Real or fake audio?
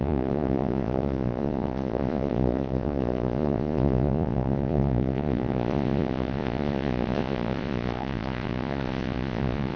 fake